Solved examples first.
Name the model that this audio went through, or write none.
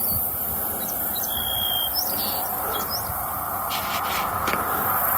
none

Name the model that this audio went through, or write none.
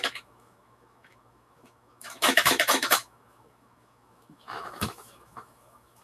autoencoder, DAC-VAE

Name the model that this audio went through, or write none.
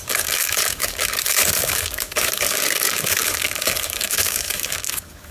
codec, DAC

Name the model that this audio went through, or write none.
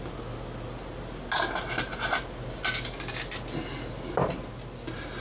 none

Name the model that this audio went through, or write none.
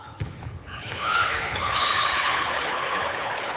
codec, HILCodec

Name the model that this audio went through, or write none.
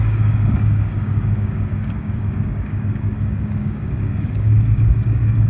codec, DAC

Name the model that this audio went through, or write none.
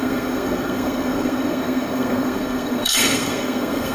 codec, SNAC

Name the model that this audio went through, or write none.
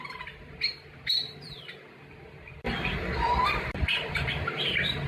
none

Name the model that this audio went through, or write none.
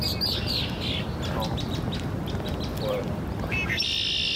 vocoder, BigVGAN v2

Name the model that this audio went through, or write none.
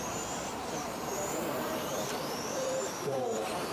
vocoder, BigVGAN v2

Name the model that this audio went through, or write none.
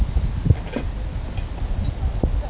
none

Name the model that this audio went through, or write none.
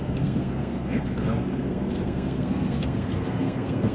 codec, SNAC